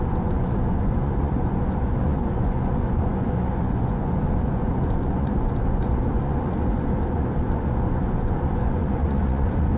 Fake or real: fake